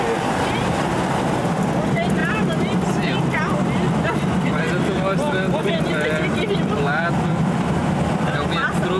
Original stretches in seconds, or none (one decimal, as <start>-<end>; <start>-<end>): 2.2-5.6; 7.8-9.0